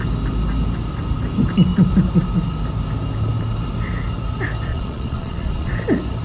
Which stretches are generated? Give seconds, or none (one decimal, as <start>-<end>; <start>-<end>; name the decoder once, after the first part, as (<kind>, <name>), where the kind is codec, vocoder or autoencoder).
4.7-5.7 (vocoder, Vocos)